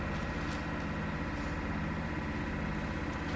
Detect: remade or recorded recorded